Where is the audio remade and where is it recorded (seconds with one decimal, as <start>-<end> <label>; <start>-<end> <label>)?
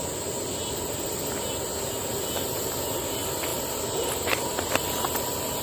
0.0-5.6 recorded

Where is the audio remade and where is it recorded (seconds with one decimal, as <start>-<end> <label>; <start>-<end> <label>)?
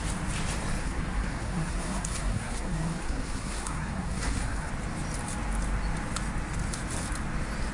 0.0-0.8 recorded; 0.8-4.7 remade; 4.7-7.7 recorded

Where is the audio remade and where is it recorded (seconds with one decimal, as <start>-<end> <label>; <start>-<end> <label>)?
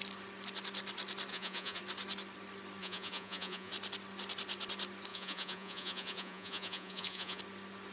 0.0-1.3 recorded; 1.3-1.8 remade; 1.8-2.8 recorded; 2.8-3.7 remade; 3.7-5.1 recorded; 5.1-7.4 remade; 7.4-7.9 recorded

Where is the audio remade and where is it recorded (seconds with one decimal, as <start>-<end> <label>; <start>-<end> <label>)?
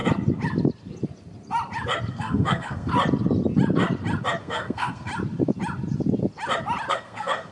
0.0-2.1 recorded; 2.1-2.9 remade; 2.9-4.4 recorded; 4.4-5.1 remade; 5.1-6.9 recorded; 6.9-7.5 remade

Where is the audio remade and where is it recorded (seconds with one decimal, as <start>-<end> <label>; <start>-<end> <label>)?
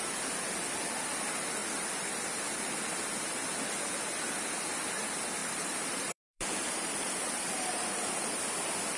0.0-5.4 recorded; 5.4-8.4 remade; 8.4-9.0 recorded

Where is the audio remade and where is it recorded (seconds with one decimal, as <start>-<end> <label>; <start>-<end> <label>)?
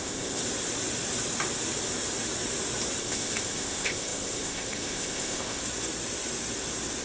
0.0-0.4 remade; 0.4-3.0 recorded; 3.0-5.6 remade; 5.6-7.0 recorded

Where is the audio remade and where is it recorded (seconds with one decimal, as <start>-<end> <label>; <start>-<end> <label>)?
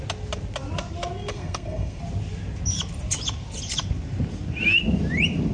0.0-1.3 recorded; 1.3-2.0 remade; 2.0-5.5 recorded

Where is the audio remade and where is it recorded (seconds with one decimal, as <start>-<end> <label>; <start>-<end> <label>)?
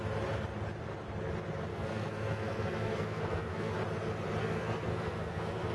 0.0-1.7 recorded; 1.7-3.7 remade; 3.7-4.4 recorded; 4.4-5.7 remade